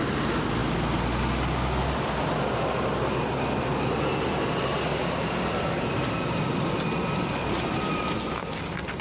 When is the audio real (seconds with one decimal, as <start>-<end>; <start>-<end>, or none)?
0.0-4.9; 6.0-7.4; 8.1-9.0